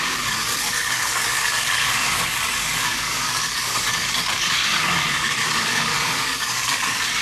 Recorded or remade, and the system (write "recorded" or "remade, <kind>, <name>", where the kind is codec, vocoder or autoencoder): remade, codec, DAC